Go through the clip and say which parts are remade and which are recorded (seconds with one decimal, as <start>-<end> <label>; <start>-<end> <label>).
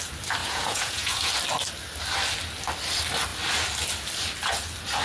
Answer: 0.0-0.4 recorded; 0.4-1.3 remade; 1.3-5.0 recorded